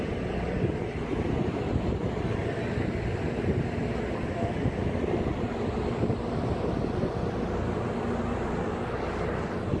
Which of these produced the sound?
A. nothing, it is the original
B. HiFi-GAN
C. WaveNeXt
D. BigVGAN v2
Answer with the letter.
A